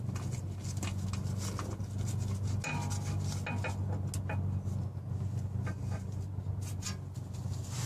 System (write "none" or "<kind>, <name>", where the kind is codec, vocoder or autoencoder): none